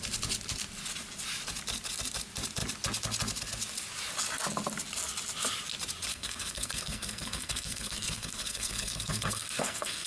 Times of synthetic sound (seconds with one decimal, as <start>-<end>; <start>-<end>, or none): 6.1-10.1